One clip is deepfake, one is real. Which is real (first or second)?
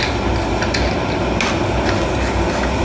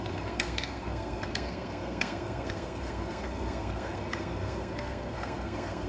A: first